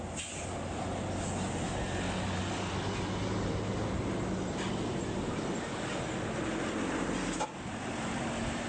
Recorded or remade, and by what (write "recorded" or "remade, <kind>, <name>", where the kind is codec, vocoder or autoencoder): recorded